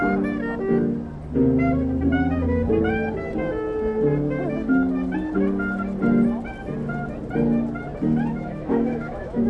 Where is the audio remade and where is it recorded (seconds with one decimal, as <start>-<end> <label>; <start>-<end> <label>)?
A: 0.0-8.3 recorded; 8.3-9.5 remade